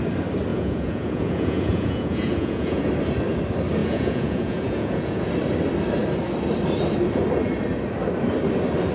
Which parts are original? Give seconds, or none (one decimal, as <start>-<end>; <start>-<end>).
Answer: 0.0-0.5; 2.8-3.8; 5.3-8.9